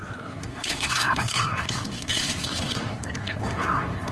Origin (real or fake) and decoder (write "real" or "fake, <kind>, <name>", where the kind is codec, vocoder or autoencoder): fake, codec, SNAC